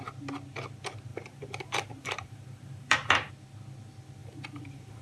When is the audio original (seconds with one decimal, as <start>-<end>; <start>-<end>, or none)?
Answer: 0.0-1.1; 3.3-4.2